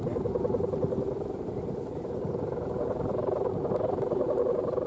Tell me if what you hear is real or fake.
real